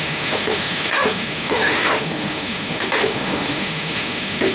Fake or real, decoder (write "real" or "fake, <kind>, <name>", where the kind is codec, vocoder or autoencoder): fake, autoencoder, DAC-VAE